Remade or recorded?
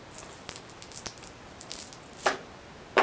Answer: recorded